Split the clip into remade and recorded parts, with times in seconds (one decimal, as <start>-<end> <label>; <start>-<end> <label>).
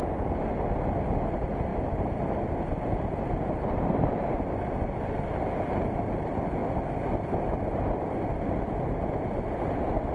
0.0-10.1 recorded